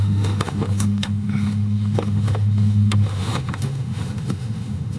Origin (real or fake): fake